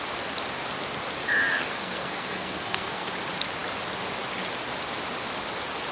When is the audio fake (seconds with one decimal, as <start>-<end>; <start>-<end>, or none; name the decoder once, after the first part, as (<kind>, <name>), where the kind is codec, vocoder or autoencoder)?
1.7-3.1 (codec, SNAC)